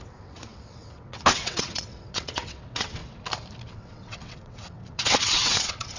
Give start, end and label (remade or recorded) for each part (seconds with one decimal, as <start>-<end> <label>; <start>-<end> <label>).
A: 0.0-3.0 remade; 3.0-3.7 recorded; 3.7-6.0 remade